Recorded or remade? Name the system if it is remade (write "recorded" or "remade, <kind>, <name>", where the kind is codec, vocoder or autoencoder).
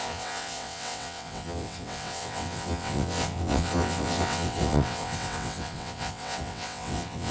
remade, vocoder, WaveNeXt